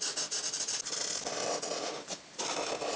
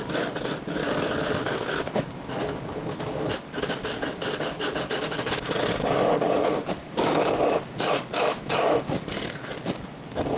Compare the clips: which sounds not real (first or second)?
second